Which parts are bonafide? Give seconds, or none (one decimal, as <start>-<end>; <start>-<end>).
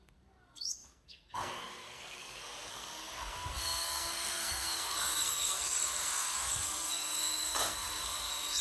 none